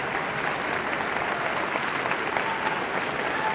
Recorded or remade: recorded